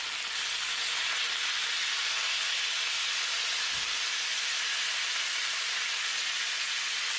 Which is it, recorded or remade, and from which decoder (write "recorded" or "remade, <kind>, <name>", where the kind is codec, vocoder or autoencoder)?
recorded